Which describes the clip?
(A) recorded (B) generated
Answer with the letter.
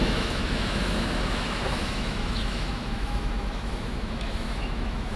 B